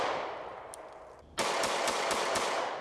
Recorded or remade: recorded